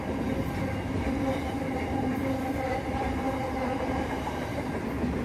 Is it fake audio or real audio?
fake